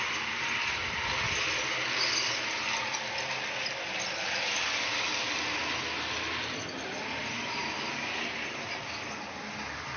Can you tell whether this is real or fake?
real